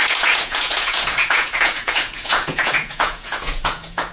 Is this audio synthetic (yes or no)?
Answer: yes